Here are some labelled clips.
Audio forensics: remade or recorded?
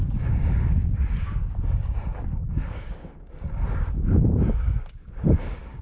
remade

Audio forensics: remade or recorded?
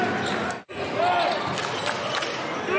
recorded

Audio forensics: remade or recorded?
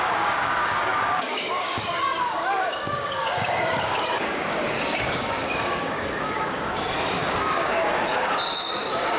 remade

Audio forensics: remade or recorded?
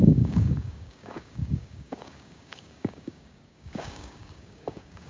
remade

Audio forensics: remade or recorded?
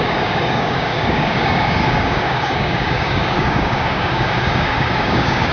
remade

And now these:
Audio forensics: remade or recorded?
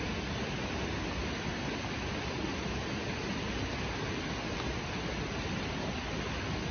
recorded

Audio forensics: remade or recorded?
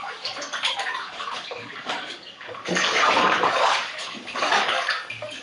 remade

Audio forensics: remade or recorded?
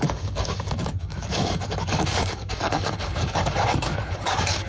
remade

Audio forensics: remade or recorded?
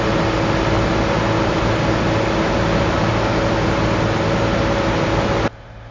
recorded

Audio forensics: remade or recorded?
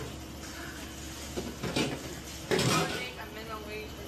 recorded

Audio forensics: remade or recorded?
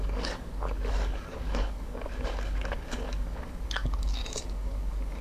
remade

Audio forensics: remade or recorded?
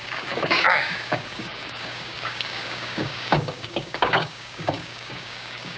remade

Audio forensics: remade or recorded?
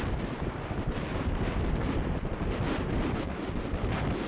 recorded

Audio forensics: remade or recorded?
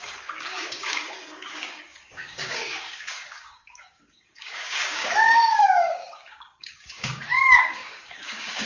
remade